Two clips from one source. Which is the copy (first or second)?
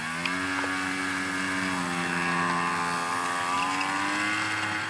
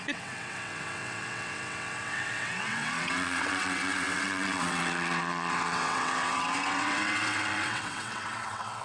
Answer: second